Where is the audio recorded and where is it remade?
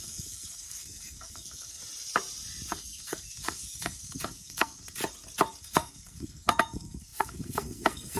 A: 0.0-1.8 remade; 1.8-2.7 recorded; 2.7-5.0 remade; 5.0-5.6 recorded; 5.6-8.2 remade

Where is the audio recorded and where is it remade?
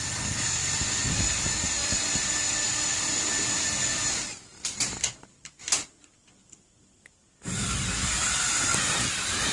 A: 0.0-9.5 recorded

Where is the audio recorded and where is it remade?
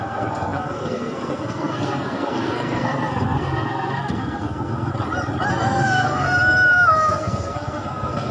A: 0.0-4.9 remade; 4.9-5.5 recorded; 5.5-8.3 remade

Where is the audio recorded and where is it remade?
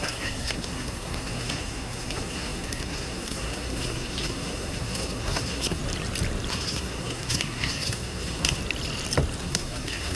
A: 0.0-5.8 remade; 5.8-6.5 recorded; 6.5-8.6 remade; 8.6-9.4 recorded; 9.4-10.2 remade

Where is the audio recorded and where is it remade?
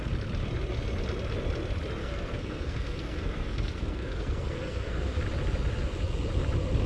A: 0.0-2.0 recorded; 2.0-5.2 remade; 5.2-6.9 recorded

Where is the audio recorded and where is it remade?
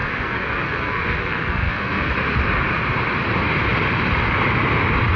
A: 0.0-2.1 remade; 2.1-5.2 recorded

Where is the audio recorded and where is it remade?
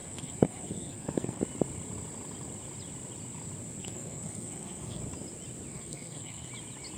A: 0.0-1.4 remade; 1.4-3.8 recorded; 3.8-5.0 remade; 5.0-5.7 recorded; 5.7-6.5 remade; 6.5-7.0 recorded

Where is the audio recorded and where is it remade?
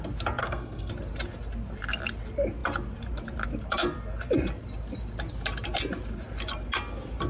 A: 0.0-0.4 recorded; 0.4-0.9 remade; 0.9-7.3 recorded